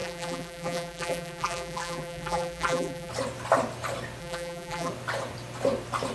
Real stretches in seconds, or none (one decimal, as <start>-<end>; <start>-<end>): 3.1-4.2; 4.9-6.1